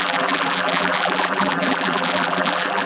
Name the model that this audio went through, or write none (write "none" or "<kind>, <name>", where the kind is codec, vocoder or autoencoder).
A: vocoder, BigVGAN v2